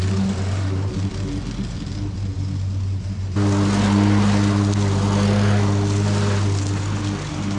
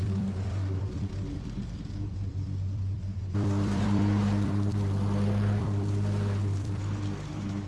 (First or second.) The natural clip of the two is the first